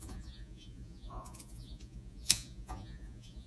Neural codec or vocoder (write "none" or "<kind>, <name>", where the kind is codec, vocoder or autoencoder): vocoder, Vocos